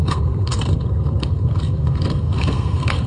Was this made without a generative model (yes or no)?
no